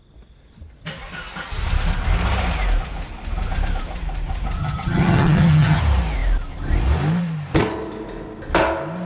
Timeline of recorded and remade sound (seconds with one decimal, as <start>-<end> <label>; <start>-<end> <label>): 0.0-4.6 recorded; 4.6-5.8 remade; 5.8-9.1 recorded